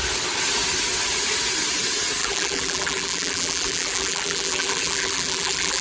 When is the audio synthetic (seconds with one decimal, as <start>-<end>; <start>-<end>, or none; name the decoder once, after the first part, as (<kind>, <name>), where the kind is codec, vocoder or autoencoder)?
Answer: 2.2-5.8 (vocoder, BigVGAN v2)